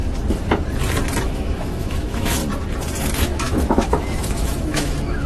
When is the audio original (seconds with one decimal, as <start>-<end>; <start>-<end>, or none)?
0.0-1.2; 2.4-3.0